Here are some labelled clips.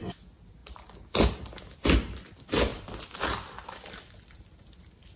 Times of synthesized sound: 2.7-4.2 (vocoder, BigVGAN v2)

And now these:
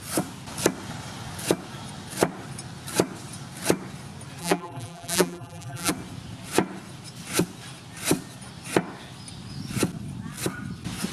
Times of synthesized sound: 4.4-5.9 (vocoder, BigVGAN v2)

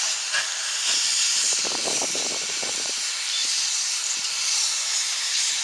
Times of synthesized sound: 0.0-5.6 (vocoder, BigVGAN v2)

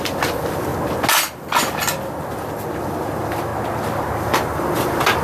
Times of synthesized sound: 0.0-0.7 (vocoder, BigVGAN v2); 2.8-3.5; 4.2-5.2

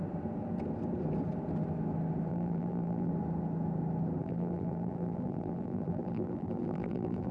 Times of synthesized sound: 2.3-3.1 (vocoder, BigVGAN v2); 4.2-7.3